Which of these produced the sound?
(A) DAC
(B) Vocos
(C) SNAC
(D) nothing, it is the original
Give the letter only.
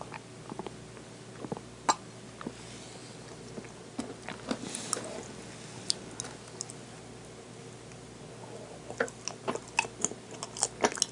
D